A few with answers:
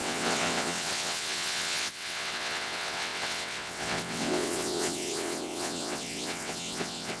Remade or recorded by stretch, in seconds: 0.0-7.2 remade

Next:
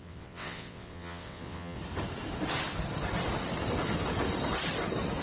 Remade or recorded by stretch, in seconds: 0.0-1.8 remade; 1.8-5.2 recorded

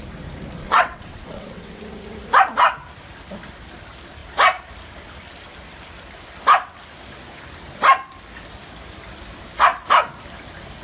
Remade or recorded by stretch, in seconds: 0.0-0.6 recorded; 0.6-1.8 remade; 1.8-10.8 recorded

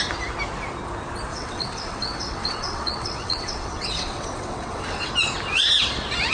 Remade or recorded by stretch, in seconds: 0.0-1.3 recorded; 1.3-5.1 remade; 5.1-6.3 recorded

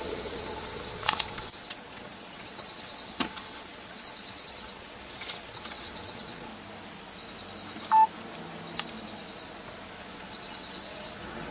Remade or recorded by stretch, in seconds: 0.0-6.5 remade; 6.5-10.0 recorded; 10.0-11.5 remade

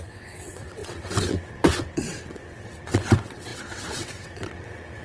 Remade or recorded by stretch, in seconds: 0.0-5.0 remade